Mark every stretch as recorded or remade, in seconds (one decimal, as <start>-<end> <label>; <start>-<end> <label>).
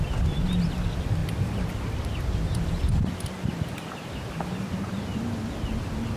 0.0-6.2 recorded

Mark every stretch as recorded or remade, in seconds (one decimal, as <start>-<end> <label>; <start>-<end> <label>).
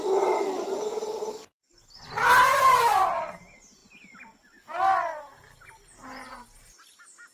0.0-7.3 recorded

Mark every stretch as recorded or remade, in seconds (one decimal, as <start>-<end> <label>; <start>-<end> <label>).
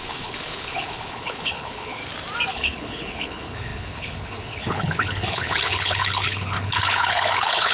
0.0-2.0 remade; 2.0-2.5 recorded; 2.5-7.7 remade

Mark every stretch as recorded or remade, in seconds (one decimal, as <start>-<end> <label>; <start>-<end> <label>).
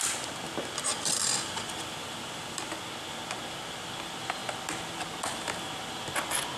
0.0-0.9 recorded; 0.9-2.8 remade; 2.8-6.6 recorded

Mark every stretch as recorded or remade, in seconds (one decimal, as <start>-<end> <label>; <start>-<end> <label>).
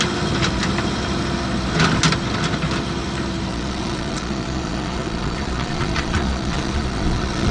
0.0-3.5 recorded; 3.5-7.5 remade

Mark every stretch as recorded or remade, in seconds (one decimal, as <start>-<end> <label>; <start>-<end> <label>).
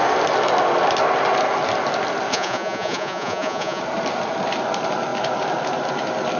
0.0-2.3 recorded; 2.3-3.8 remade; 3.8-6.4 recorded